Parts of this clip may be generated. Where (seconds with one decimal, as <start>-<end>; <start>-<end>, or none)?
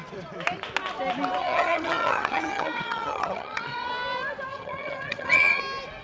1.4-3.9; 4.5-5.6